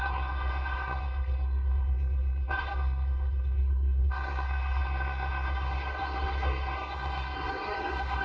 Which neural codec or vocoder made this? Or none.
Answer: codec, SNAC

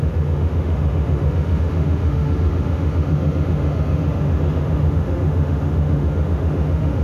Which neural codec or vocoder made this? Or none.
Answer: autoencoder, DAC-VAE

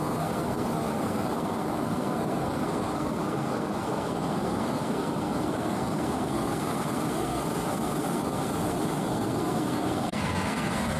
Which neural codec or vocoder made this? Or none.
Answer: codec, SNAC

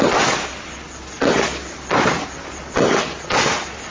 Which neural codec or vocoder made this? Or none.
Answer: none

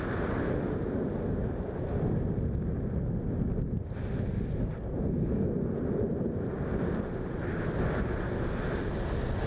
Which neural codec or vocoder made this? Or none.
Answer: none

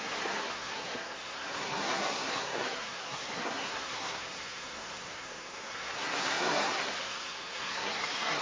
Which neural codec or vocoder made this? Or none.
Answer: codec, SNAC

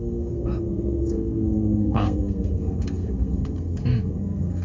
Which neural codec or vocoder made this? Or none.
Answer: codec, SNAC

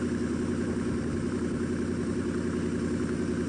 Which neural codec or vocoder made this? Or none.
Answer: vocoder, BigVGAN v2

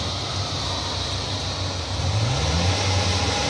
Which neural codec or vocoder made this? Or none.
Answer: vocoder, BigVGAN v2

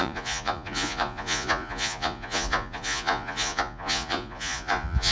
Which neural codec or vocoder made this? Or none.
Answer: vocoder, Vocos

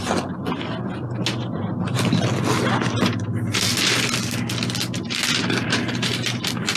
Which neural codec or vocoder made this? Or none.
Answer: none